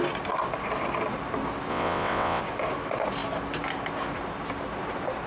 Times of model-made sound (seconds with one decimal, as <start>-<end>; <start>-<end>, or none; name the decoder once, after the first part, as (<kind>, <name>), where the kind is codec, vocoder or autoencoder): 1.7-2.4 (vocoder, WaveNeXt)